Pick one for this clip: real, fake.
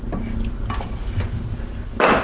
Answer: real